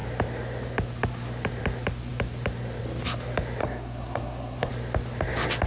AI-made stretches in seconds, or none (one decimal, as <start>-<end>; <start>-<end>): 3.6-4.7